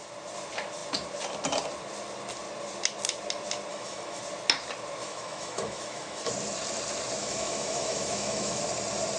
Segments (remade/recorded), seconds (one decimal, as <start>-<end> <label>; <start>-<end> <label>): 0.0-3.7 recorded; 3.7-4.2 remade; 4.2-5.0 recorded; 5.0-6.3 remade; 6.3-7.2 recorded; 7.2-8.6 remade; 8.6-9.2 recorded